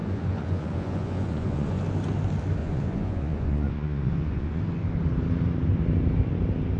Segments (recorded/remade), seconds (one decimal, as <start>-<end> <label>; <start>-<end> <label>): 0.0-1.8 remade; 1.8-2.6 recorded; 2.6-4.6 remade; 4.6-6.8 recorded

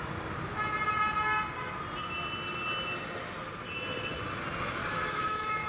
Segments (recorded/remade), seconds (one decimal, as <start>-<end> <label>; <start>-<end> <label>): 0.0-4.8 recorded; 4.8-5.7 remade

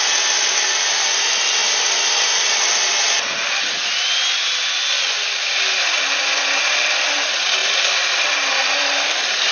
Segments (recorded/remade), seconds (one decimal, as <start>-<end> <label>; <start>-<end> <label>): 0.0-9.5 recorded

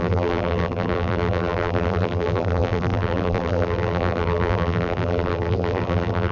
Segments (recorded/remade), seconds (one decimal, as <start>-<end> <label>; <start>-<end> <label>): 0.0-6.3 remade

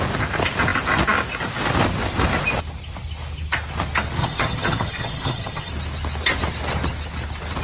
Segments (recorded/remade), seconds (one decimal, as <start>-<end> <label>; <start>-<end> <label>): 0.0-4.2 recorded; 4.2-5.7 remade; 5.7-7.6 recorded

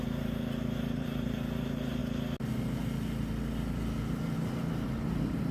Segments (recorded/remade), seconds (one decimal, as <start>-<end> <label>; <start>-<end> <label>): 0.0-2.0 remade; 2.0-5.0 recorded; 5.0-5.5 remade

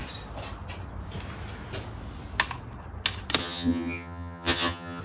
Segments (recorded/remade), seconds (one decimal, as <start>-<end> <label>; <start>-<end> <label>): 0.0-3.4 recorded; 3.4-5.0 remade